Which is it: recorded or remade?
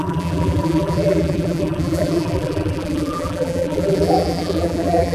remade